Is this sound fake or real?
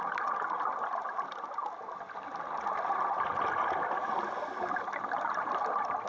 real